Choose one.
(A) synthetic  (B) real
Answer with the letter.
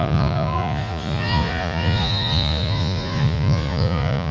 A